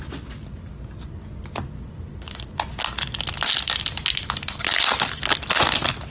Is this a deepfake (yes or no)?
no